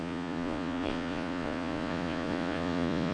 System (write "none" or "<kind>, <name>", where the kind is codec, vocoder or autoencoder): vocoder, Vocos